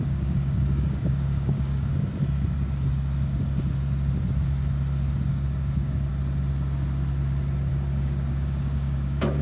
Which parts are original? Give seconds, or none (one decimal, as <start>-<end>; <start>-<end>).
1.9-5.3; 6.1-7.7